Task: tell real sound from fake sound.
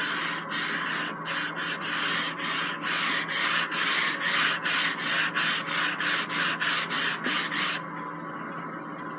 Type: real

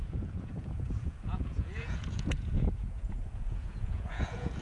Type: fake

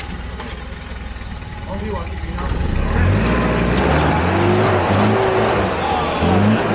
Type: real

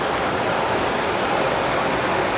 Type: real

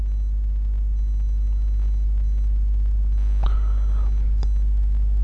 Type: real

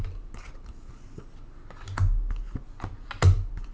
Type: real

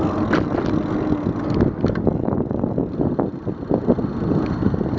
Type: real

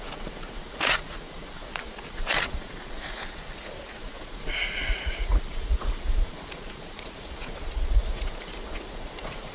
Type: fake